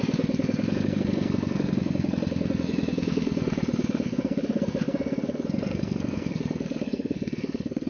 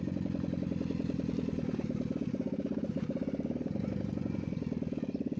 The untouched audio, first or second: second